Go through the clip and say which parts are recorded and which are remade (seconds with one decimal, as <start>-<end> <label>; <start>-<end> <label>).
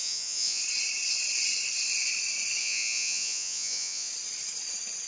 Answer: 0.0-0.6 remade; 0.6-2.6 recorded; 2.6-4.1 remade; 4.1-5.1 recorded